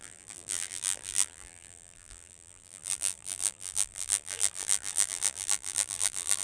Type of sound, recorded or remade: remade